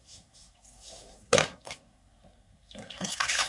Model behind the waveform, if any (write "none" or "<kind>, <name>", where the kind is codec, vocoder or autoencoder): codec, SNAC